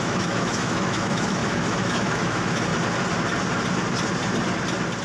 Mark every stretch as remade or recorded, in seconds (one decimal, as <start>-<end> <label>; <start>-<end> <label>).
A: 0.0-2.7 remade; 2.7-5.0 recorded

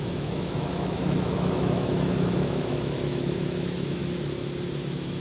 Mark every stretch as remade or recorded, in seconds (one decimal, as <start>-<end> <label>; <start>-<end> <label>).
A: 0.0-4.0 remade; 4.0-4.8 recorded; 4.8-5.2 remade

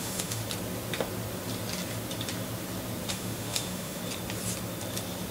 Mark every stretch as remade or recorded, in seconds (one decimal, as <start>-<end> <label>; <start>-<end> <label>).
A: 0.0-0.4 remade; 0.4-3.1 recorded; 3.1-4.0 remade; 4.0-5.3 recorded

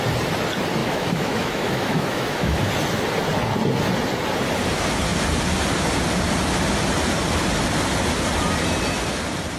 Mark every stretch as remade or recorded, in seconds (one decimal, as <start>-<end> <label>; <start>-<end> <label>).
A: 0.0-0.8 recorded; 0.8-2.7 remade; 2.7-9.6 recorded

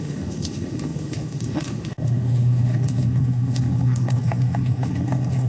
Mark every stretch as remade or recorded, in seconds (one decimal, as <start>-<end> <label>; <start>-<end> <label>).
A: 0.0-5.5 remade

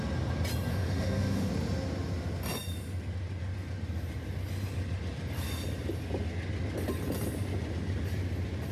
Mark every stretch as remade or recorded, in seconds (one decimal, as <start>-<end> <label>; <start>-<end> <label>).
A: 0.0-0.7 recorded; 0.7-1.5 remade; 1.5-8.7 recorded